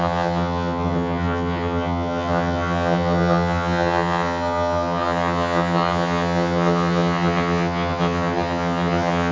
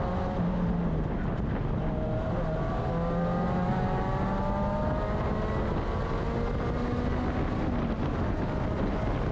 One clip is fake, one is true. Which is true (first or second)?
second